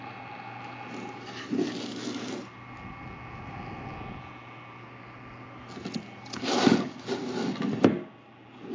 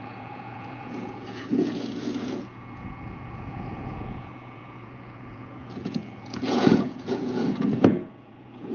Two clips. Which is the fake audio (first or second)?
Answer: second